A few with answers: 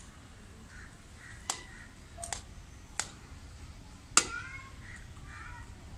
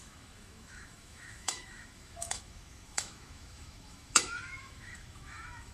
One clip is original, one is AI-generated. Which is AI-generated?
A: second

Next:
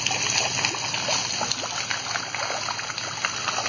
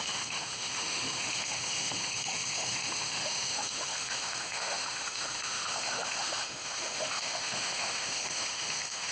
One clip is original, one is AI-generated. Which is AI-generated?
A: second